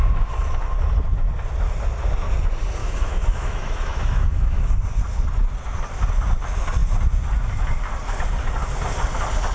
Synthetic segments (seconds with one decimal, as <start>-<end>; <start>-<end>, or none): 2.8-4.8